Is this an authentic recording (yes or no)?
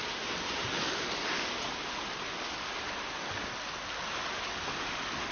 yes